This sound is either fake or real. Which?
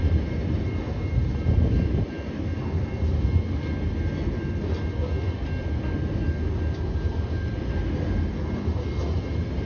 real